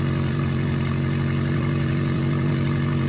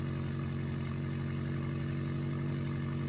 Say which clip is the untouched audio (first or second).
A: second